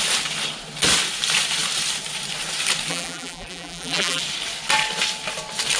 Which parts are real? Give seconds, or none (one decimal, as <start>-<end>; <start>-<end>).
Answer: 0.0-2.9; 4.2-5.8